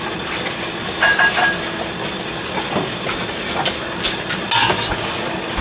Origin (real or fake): real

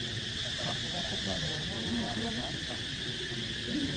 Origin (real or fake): fake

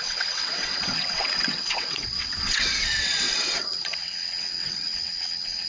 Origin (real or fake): fake